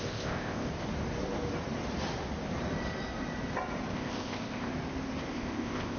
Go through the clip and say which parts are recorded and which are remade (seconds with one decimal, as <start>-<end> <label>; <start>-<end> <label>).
0.0-0.7 remade; 0.7-3.9 recorded; 3.9-4.7 remade; 4.7-5.3 recorded; 5.3-6.0 remade